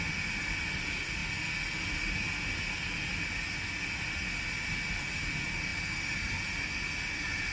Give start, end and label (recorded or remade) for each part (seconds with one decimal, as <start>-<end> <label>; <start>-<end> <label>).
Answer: 0.0-7.5 recorded